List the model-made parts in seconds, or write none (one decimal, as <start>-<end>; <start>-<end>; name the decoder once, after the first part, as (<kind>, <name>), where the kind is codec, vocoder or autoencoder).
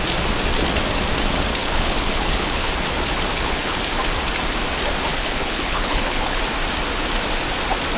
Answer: 1.5-2.7 (codec, HILCodec); 3.3-3.8; 5.1-6.4